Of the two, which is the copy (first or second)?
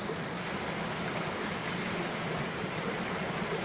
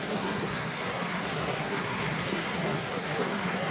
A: second